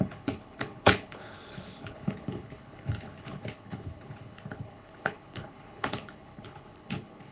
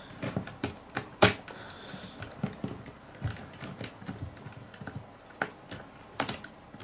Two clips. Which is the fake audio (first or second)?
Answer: first